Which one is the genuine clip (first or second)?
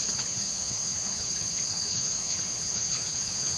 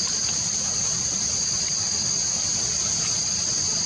second